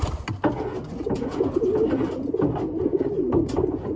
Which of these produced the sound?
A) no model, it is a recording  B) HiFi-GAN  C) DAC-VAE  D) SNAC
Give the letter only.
A